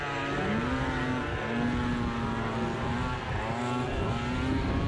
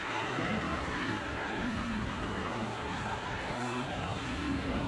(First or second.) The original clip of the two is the first